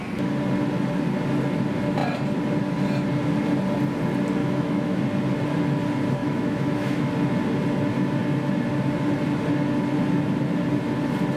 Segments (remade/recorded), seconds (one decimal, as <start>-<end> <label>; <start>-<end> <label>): 0.0-4.4 recorded; 4.4-5.0 remade; 5.0-6.2 recorded; 6.2-7.1 remade; 7.1-11.4 recorded